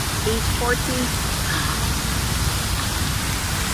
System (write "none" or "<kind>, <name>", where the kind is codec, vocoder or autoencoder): none